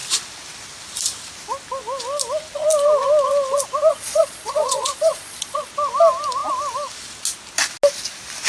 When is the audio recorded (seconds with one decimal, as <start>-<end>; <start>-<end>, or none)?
0.0-3.9; 5.7-8.5